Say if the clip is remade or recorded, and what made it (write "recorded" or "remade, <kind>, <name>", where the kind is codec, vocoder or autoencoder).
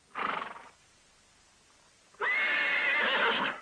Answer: recorded